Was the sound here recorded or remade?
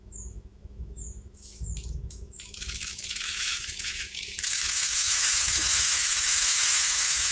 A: remade